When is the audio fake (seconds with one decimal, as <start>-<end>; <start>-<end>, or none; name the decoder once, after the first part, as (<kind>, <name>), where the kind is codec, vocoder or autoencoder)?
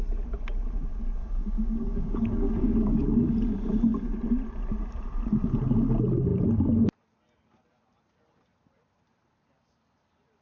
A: 1.2-3.3 (codec, DAC)